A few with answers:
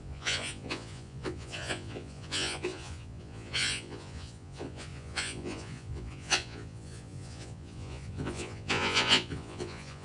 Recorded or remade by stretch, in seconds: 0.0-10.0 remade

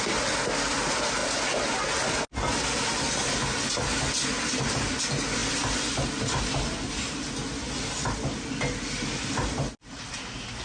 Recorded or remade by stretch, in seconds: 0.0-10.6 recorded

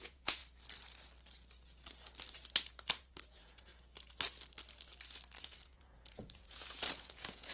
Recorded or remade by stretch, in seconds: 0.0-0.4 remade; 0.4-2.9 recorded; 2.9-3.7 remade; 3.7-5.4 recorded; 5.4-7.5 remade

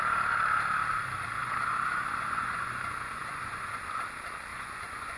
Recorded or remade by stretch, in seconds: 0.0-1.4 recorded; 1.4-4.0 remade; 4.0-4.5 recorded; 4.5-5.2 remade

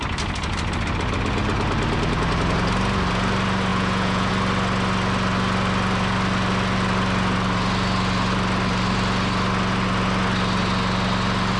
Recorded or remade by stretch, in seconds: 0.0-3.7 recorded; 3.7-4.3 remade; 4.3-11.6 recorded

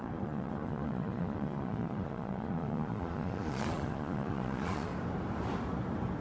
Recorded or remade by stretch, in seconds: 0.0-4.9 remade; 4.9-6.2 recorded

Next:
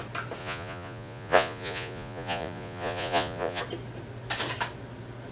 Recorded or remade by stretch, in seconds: 0.0-0.4 recorded; 0.4-3.6 remade; 3.6-5.3 recorded

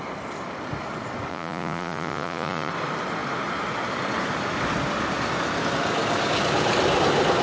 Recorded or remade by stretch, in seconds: 0.0-1.3 recorded; 1.3-2.7 remade; 2.7-7.4 recorded